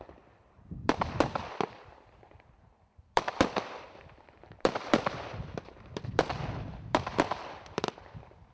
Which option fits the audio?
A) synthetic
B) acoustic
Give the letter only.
A